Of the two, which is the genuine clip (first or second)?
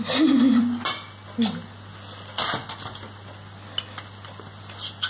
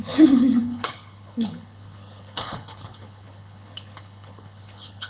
first